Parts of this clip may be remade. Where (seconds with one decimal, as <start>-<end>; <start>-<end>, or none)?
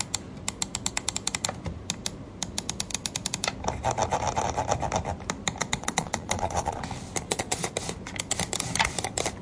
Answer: 5.6-6.8; 7.2-7.7